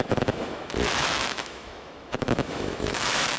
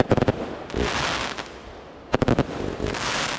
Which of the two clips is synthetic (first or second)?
first